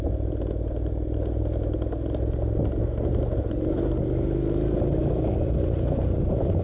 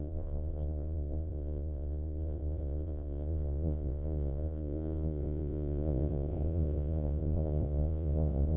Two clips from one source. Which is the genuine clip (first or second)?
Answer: first